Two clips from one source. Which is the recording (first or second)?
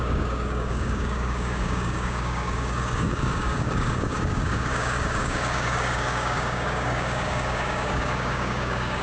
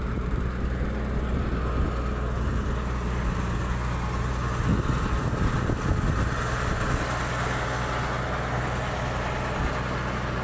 second